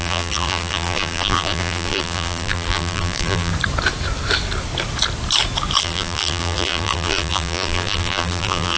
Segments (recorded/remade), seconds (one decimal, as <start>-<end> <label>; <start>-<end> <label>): 0.0-3.5 remade; 3.5-5.8 recorded; 5.8-8.8 remade